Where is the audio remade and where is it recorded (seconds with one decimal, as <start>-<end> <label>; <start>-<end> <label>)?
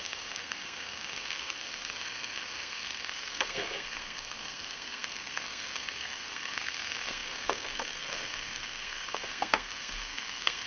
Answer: 0.0-10.7 remade